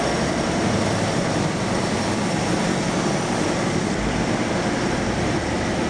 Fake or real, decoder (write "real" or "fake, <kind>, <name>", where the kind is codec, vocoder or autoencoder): fake, vocoder, BigVGAN v2